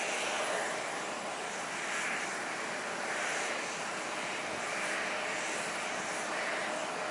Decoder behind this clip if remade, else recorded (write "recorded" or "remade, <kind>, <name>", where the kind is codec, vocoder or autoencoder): recorded